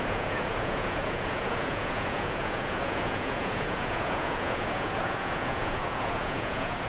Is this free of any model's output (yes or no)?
no